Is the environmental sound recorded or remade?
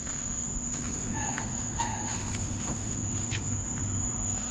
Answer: remade